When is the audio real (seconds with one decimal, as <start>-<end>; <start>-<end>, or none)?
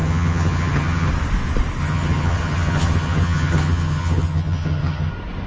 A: 1.1-1.8; 5.1-5.5